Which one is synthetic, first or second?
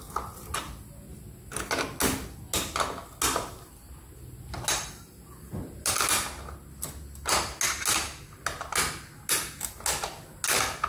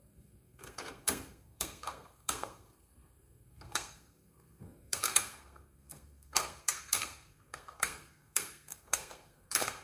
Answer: second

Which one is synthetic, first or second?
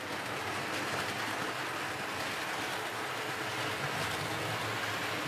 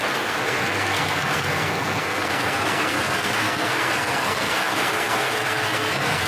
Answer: second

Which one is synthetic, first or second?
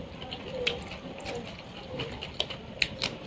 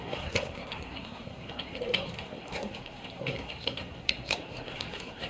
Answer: second